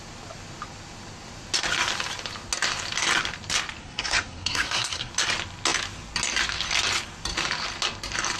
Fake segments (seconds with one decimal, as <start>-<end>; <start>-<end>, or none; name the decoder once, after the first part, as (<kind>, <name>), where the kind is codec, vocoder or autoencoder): 3.8-5.1 (codec, SNAC)